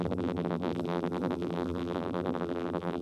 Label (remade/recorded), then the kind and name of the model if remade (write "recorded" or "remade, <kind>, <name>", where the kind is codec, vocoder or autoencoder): remade, vocoder, BigVGAN v2